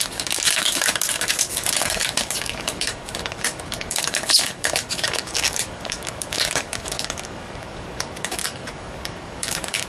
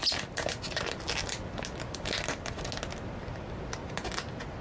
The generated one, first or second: first